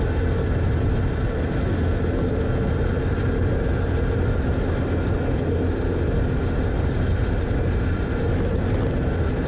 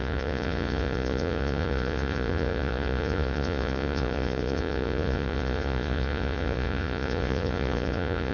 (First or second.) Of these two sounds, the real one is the first